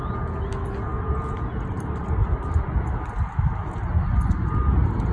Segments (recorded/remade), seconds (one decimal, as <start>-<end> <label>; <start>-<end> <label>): 0.0-5.1 recorded